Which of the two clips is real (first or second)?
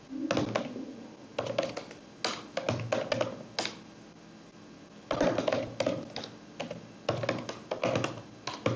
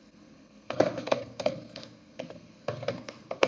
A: first